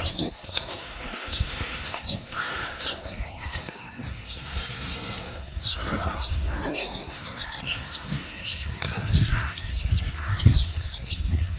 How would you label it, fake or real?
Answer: fake